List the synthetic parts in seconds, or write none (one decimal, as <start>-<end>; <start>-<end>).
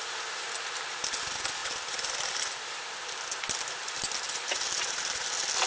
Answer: none